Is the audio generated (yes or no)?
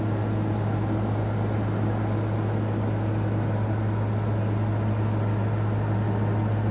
no